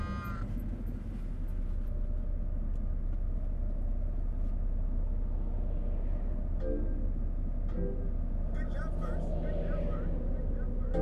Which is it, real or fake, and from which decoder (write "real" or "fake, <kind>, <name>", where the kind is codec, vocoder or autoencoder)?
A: real